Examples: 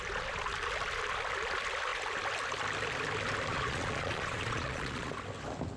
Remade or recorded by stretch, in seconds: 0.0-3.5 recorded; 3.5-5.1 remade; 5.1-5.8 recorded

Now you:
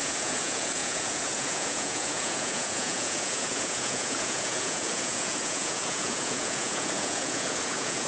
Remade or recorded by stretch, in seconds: 0.0-8.1 remade

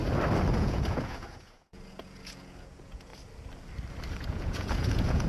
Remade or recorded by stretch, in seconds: 0.0-0.5 recorded; 0.5-3.1 remade; 3.1-4.2 recorded; 4.2-5.3 remade

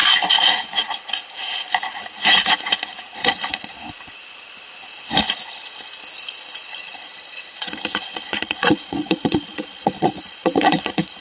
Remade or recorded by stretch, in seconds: 0.0-3.2 recorded; 3.2-3.7 remade; 3.7-6.7 recorded; 6.7-11.2 remade

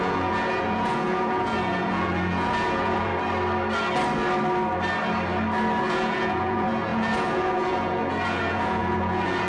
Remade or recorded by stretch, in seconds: 0.0-3.1 remade; 3.1-5.8 recorded; 5.8-9.5 remade

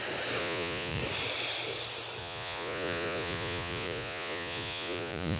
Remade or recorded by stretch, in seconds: 0.0-0.4 recorded; 0.4-1.0 remade; 1.0-2.2 recorded; 2.2-5.4 remade

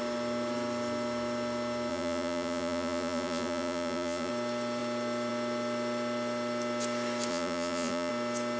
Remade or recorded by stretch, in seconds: 0.0-1.9 recorded; 1.9-4.3 remade; 4.3-7.3 recorded; 7.3-8.1 remade; 8.1-8.6 recorded

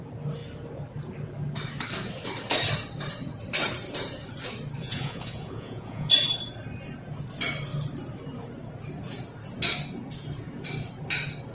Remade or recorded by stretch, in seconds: 0.0-4.8 recorded; 4.8-6.1 remade; 6.1-11.5 recorded